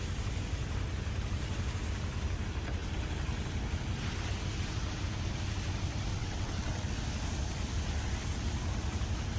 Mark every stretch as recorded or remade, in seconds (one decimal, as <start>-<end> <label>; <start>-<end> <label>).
0.0-6.1 recorded; 6.1-6.9 remade; 6.9-9.4 recorded